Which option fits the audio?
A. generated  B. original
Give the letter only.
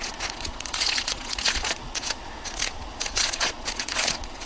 A